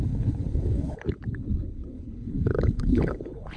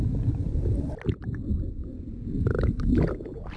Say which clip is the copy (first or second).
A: first